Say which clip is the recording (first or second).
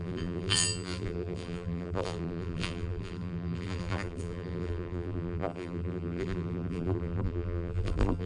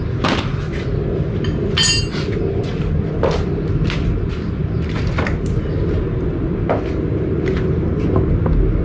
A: second